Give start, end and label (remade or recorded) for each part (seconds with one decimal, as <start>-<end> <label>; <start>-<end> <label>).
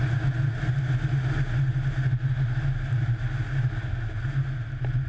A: 0.0-5.1 recorded